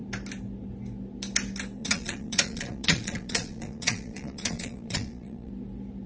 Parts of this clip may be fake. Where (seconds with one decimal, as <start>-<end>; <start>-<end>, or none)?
1.8-5.5